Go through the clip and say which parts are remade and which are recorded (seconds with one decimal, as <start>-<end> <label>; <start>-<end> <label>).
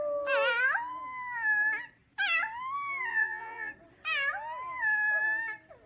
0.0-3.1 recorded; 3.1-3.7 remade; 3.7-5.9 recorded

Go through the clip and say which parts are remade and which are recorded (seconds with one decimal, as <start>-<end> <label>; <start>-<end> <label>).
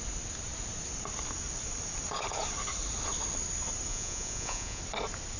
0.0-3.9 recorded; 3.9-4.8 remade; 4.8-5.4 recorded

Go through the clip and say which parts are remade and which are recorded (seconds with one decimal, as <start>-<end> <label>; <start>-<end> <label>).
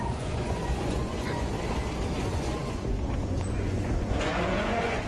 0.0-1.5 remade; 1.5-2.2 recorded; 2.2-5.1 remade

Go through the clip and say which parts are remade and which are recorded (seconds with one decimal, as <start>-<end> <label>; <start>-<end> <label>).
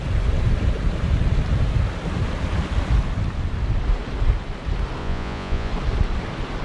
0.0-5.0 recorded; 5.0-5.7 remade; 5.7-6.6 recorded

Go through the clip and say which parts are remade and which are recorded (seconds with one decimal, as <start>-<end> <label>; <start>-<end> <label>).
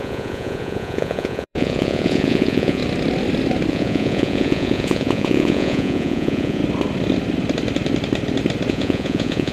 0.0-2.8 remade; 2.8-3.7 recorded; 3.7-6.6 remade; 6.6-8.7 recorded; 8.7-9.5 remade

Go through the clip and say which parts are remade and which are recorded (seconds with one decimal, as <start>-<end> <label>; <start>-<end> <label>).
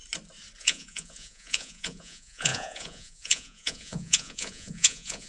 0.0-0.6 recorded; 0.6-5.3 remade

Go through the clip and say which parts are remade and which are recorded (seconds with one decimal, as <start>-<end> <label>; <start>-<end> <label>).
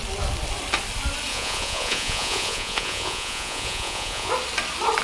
0.0-1.3 recorded; 1.3-4.3 remade; 4.3-5.0 recorded